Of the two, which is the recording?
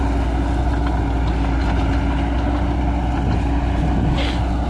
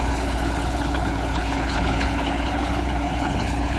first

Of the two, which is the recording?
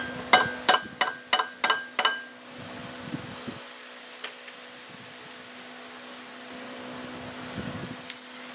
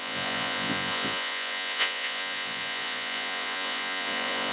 first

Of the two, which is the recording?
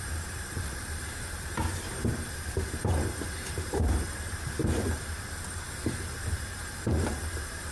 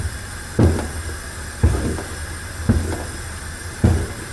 second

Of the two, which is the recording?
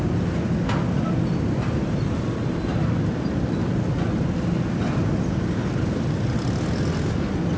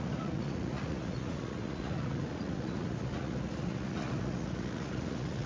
first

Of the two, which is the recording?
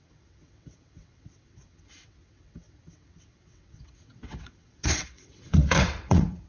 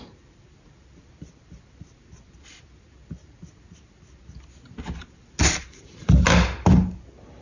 second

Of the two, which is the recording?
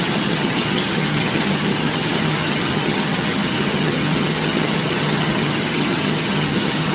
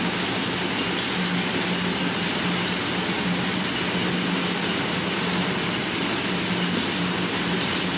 second